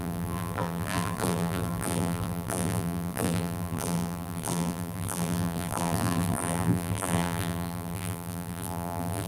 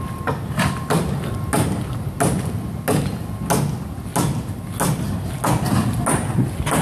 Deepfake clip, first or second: first